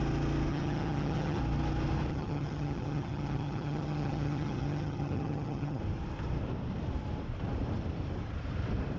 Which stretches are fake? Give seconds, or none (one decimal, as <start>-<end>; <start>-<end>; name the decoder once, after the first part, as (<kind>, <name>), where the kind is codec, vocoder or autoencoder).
0.5-1.4 (vocoder, HiFi-GAN); 2.1-5.8